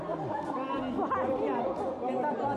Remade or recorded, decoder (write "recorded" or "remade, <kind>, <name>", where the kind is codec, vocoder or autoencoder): recorded